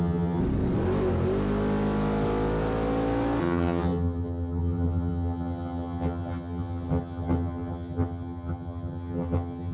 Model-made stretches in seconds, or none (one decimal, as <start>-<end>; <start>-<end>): 0.0-0.4; 3.4-9.7